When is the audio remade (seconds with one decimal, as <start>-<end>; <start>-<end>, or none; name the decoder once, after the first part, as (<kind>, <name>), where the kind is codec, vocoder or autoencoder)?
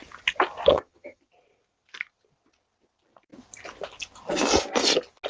0.7-1.2 (vocoder, HiFi-GAN)